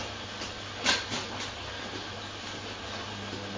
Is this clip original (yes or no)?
yes